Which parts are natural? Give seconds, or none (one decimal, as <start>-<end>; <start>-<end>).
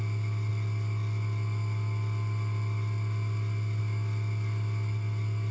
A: 0.0-5.5